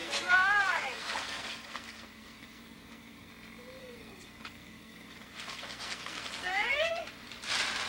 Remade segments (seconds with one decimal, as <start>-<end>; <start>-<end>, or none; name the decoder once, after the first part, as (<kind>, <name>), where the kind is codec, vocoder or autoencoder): 0.0-3.3 (codec, SNAC); 3.8-6.9